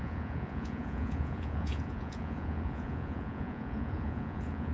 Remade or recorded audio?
remade